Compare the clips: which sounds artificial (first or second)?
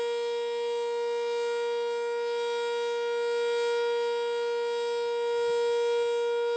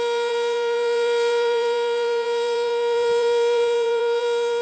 second